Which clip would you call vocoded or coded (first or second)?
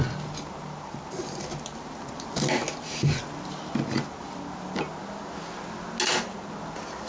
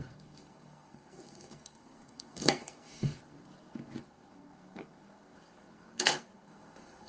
second